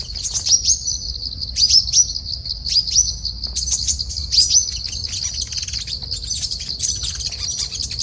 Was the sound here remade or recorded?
recorded